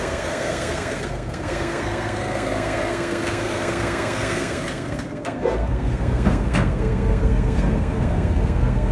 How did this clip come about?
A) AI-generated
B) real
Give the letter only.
A